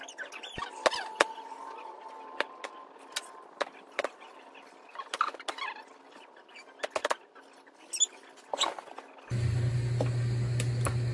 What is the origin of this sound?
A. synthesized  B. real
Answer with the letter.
B